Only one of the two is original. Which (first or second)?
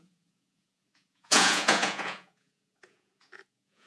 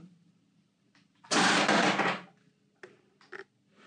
second